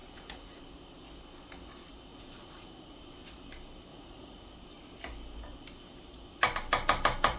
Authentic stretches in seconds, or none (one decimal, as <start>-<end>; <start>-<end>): 0.6-2.1; 3.0-3.9; 4.5-7.4

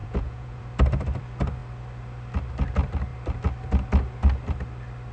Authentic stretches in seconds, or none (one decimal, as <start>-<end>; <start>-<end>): 0.6-5.1

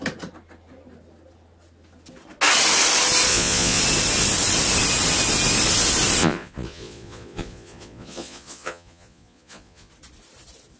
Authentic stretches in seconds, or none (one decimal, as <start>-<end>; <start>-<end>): 0.0-3.3; 3.8-6.2; 9.9-10.8

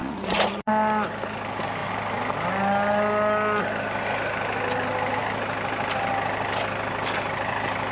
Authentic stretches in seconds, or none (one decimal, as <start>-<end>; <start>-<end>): 0.7-7.9

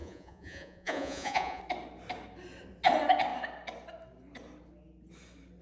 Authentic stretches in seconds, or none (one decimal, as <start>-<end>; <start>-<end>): 1.6-5.6

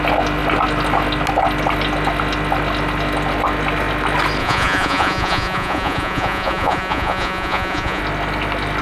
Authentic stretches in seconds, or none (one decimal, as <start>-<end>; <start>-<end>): 0.0-4.4; 8.0-8.8

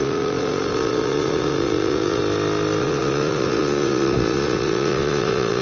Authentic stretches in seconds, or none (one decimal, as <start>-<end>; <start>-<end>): 2.2-2.8

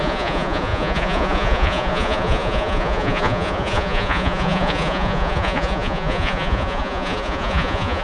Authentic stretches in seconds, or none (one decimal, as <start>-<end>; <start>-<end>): none